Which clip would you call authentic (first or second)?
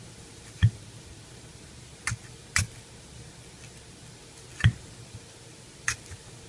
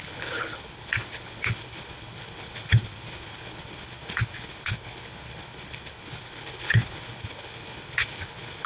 first